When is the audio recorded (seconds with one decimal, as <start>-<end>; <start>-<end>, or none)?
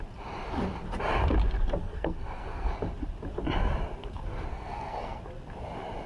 0.0-1.8; 2.7-4.5; 5.2-6.1